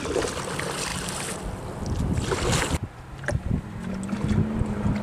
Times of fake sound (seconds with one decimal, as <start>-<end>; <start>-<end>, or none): none